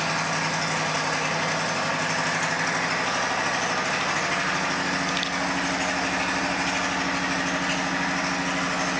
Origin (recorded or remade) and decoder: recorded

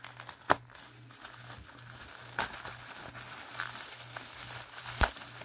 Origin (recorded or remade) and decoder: recorded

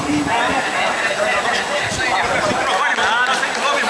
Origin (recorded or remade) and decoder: recorded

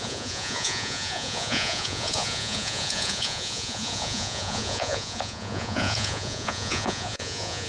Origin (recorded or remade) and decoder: remade, vocoder, Vocos